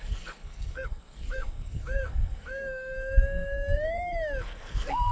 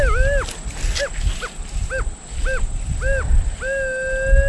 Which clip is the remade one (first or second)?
first